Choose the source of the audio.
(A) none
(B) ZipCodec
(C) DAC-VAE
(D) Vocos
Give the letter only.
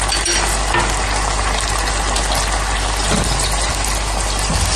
A